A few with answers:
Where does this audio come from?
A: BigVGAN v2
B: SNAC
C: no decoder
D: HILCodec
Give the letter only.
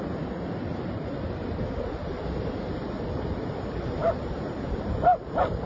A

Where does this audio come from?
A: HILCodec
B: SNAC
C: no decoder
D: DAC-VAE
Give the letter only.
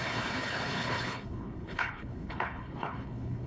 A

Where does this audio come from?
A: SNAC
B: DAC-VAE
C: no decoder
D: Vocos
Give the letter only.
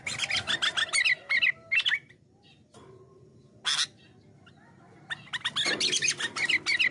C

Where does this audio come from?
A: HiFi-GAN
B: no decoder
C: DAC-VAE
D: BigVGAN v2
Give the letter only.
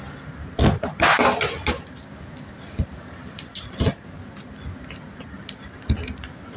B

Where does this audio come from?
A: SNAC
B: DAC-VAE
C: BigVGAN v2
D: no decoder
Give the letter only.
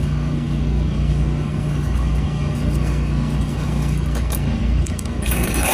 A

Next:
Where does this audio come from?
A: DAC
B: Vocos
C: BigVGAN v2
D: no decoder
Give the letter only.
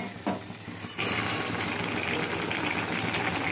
D